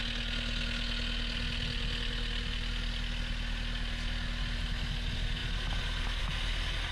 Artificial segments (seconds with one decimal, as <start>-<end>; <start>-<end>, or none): none